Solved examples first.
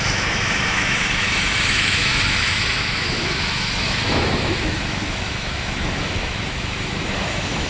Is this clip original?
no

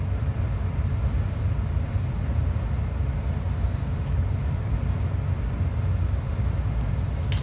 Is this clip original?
yes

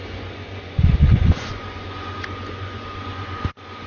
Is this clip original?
no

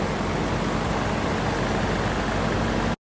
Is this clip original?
yes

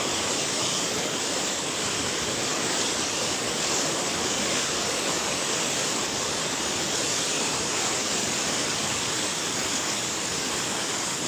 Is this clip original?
no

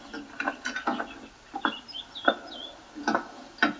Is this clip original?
yes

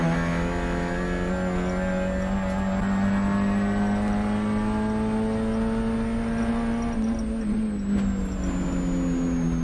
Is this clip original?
yes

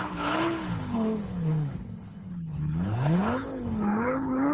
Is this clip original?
no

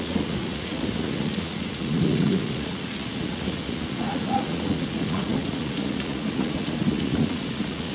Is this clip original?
no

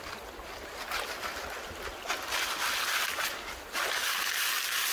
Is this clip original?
yes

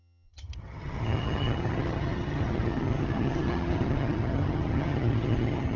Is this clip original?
no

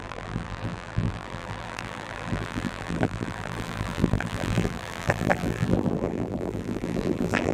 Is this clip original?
no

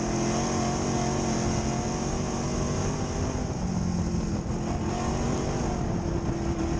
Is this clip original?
yes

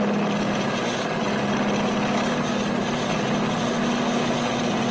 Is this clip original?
yes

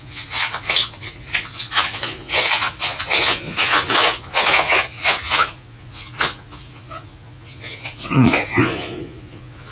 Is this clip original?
no